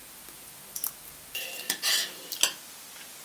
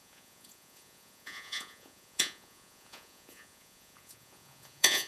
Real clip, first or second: first